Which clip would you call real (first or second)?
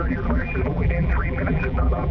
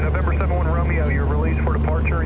second